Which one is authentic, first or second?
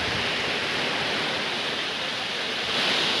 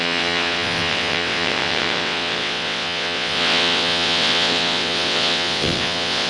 first